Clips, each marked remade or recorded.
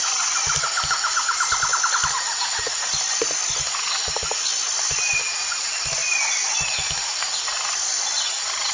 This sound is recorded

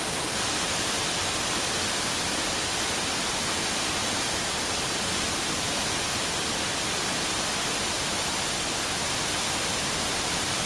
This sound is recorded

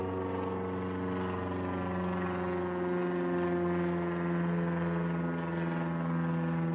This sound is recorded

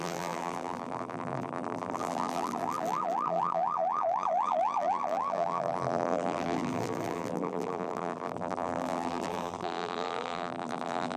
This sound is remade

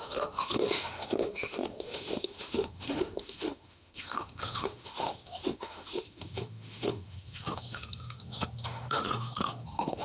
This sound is remade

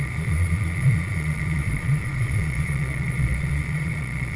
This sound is remade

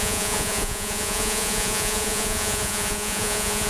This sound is remade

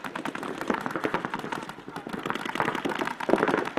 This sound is recorded